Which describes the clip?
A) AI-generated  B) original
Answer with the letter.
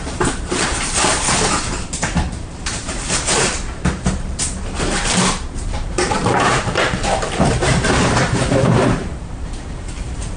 A